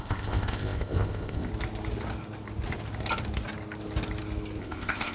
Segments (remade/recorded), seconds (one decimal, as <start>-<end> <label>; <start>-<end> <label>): 0.0-1.5 remade; 1.5-4.6 recorded; 4.6-5.1 remade